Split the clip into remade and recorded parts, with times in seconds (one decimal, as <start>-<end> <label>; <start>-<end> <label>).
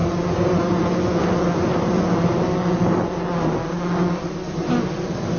0.0-0.8 remade; 0.8-5.4 recorded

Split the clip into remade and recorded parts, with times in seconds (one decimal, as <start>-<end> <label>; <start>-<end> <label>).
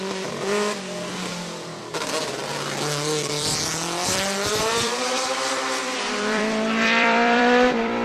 0.0-1.8 remade; 1.8-3.3 recorded; 3.3-8.0 remade